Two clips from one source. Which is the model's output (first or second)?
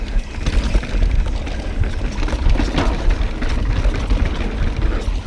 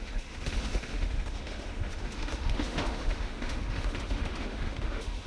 second